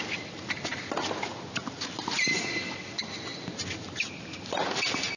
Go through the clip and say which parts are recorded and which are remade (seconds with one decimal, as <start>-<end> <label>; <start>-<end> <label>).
0.0-5.2 recorded